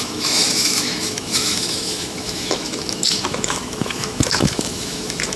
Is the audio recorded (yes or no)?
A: no